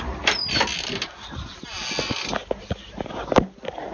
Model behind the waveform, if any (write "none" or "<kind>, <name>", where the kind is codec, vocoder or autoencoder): none